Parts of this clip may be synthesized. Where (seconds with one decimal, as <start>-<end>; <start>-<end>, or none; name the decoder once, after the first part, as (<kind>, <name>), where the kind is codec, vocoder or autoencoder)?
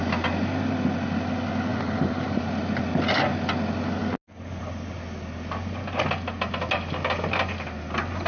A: 1.7-2.4 (vocoder, BigVGAN v2)